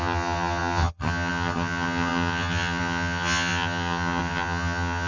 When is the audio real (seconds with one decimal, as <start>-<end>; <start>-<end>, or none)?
none